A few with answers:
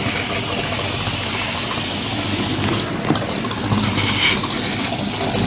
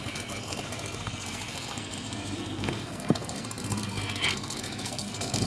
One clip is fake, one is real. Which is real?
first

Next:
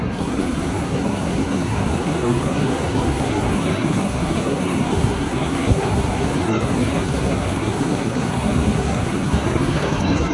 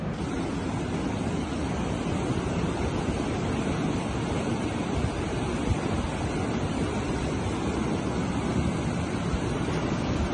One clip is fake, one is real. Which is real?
second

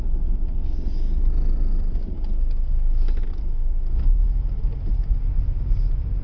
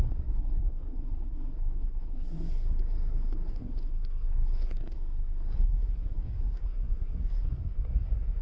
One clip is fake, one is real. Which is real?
first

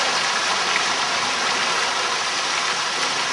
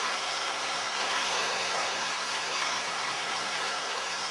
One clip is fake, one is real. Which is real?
first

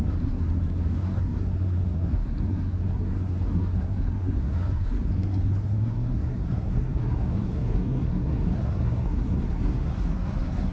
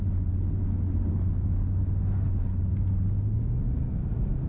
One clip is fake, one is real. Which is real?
second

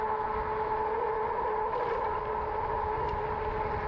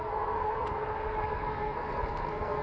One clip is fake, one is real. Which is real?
first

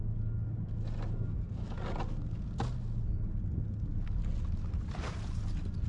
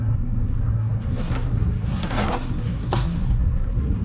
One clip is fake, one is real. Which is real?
first